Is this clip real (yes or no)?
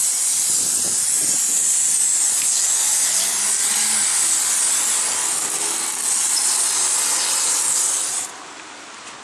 yes